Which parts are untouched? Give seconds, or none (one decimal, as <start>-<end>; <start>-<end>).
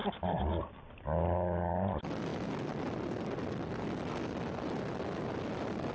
0.0-5.9